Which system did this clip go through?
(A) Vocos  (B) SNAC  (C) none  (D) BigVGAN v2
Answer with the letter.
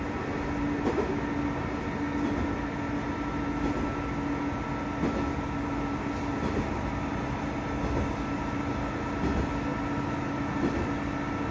C